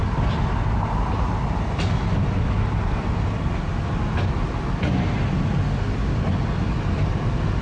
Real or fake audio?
real